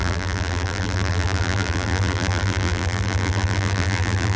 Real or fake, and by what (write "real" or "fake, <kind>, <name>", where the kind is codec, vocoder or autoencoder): fake, vocoder, BigVGAN v2